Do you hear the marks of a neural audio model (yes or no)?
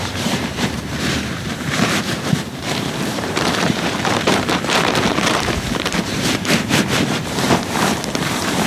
yes